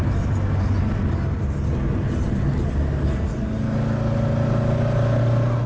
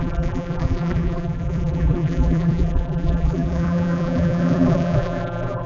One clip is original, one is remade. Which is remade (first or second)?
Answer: second